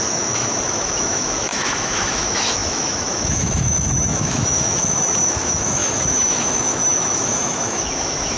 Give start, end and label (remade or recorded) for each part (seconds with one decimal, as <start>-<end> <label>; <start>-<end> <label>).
0.0-8.4 remade